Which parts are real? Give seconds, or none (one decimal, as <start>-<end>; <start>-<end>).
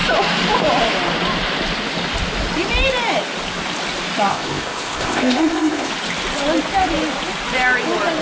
0.0-4.3; 5.9-8.2